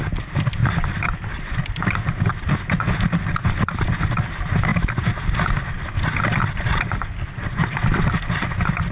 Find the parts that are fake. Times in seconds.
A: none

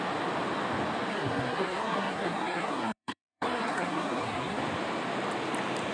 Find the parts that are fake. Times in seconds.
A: 1.1-4.6 (codec, SNAC)

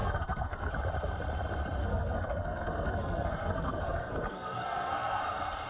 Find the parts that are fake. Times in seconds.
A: 0.0-0.7 (codec, SNAC); 1.8-5.2

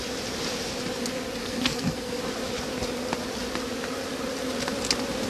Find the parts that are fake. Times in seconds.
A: 1.4-2.2 (codec, SNAC)

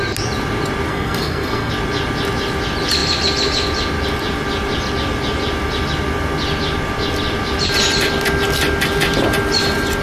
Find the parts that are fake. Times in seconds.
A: 0.9-1.7 (codec, SNAC)

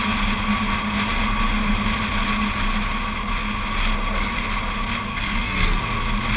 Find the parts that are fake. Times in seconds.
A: 5.1-5.8 (codec, SNAC)